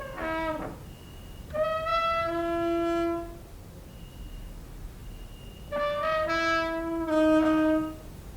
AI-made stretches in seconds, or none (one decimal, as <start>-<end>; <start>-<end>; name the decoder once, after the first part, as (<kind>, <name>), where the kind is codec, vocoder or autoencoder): none